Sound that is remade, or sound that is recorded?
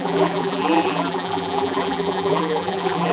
remade